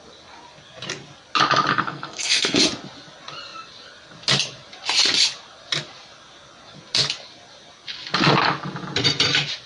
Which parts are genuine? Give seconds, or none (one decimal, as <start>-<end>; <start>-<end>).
0.0-1.7; 2.6-9.7